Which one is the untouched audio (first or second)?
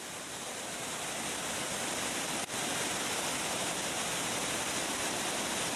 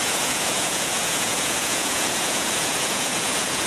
first